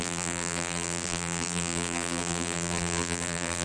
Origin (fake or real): fake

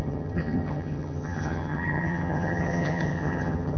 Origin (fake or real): fake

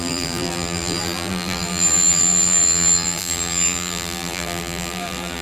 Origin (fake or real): fake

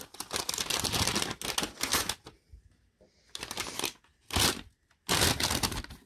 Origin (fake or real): real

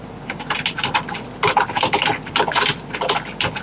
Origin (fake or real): real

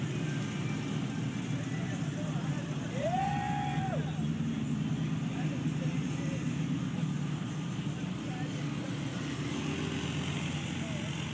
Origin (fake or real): real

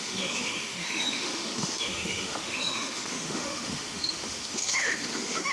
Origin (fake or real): fake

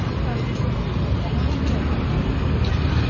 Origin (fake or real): real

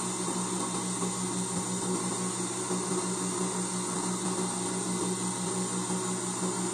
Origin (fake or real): real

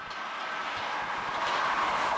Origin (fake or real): real